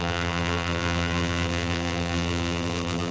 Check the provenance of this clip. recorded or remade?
remade